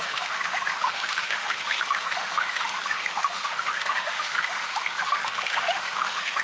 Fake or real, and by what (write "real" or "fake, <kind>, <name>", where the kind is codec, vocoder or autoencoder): fake, autoencoder, DAC-VAE